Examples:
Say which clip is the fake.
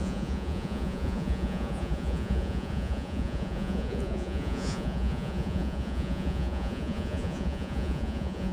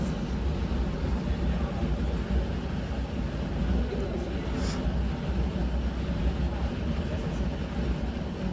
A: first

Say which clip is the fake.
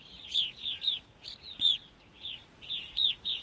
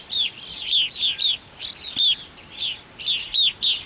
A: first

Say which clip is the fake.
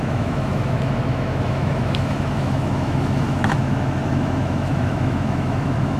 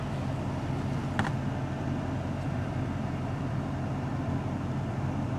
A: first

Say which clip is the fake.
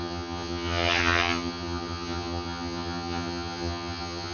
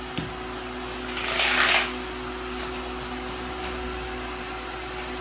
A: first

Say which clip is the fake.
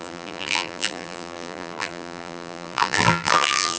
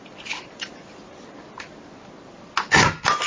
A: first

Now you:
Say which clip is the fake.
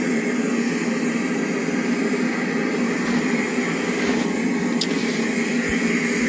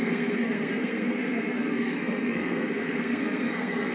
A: second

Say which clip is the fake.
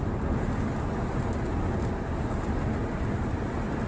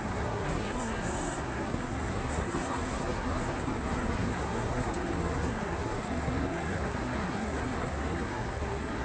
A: second